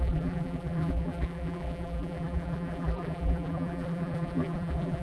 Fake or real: fake